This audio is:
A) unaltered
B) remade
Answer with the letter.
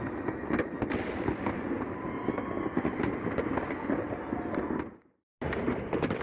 A